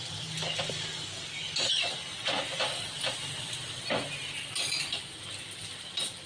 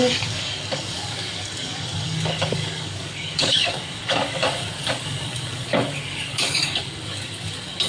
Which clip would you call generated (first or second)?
second